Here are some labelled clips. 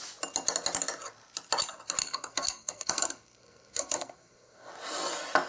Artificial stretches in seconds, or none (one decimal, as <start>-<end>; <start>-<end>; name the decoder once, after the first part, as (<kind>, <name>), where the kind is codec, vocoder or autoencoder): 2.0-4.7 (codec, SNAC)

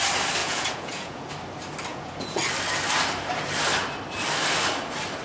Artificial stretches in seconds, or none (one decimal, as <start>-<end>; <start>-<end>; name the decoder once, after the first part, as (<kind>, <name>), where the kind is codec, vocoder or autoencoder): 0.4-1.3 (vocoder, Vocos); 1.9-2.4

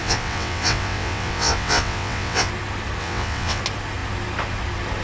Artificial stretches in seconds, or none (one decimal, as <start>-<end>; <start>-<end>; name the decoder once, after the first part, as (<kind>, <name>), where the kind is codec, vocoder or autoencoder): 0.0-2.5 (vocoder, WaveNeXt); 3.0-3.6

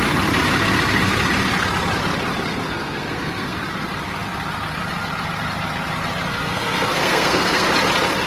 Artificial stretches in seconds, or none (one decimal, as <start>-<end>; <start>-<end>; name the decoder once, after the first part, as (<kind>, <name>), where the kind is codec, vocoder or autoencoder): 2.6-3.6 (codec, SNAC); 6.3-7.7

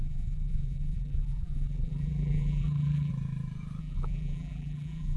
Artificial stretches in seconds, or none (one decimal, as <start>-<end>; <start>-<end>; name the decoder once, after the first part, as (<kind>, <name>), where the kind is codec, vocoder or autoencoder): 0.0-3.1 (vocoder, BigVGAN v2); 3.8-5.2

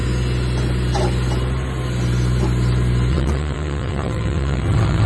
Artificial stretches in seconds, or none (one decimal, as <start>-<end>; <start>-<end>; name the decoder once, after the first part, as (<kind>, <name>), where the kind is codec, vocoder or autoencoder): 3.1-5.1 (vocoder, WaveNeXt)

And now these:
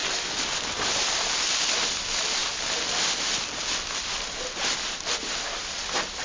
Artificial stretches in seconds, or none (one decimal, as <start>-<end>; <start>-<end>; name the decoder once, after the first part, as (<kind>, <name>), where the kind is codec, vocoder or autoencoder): none